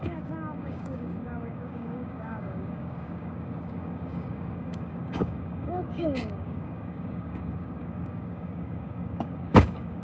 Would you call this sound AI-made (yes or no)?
yes